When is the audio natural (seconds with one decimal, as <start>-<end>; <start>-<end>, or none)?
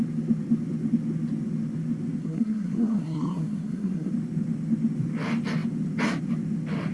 0.0-2.2; 4.1-6.9